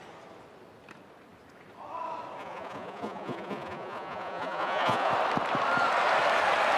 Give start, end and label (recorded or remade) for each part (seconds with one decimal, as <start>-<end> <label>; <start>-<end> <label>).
0.0-2.4 recorded; 2.4-5.1 remade; 5.1-6.8 recorded